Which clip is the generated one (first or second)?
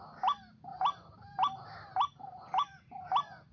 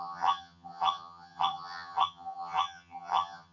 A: second